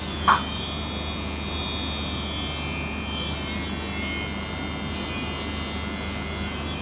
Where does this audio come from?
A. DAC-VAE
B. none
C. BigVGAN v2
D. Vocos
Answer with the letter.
B